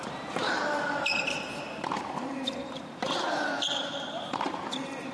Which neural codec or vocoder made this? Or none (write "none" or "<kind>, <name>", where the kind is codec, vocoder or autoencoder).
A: vocoder, BigVGAN v2